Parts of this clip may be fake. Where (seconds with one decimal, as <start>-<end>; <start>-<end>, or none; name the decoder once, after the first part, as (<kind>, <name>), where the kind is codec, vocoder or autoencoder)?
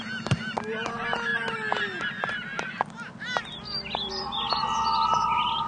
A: none